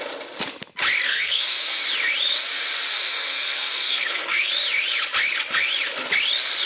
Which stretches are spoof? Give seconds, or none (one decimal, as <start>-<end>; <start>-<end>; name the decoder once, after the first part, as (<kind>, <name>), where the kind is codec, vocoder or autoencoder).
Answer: 1.1-1.8 (codec, SNAC); 2.9-4.5